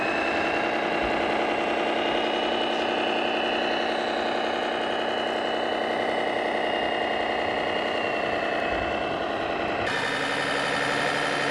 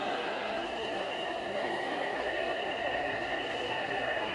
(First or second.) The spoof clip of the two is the second